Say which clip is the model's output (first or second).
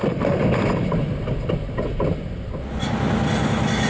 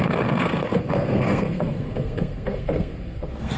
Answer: second